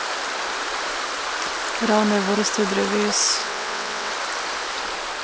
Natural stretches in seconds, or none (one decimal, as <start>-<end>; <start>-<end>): 0.0-3.4; 4.1-5.2